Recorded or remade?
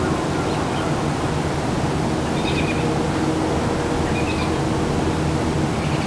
recorded